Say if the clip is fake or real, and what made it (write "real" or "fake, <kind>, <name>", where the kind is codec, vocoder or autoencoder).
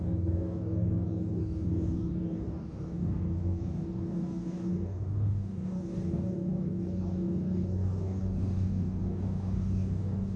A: fake, codec, DAC